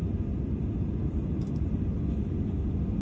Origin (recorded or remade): recorded